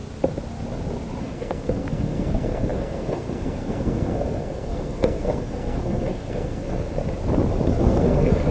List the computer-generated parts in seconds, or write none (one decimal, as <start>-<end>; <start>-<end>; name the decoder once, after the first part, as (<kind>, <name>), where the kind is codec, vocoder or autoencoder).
1.2-7.0 (codec, SNAC); 7.8-8.5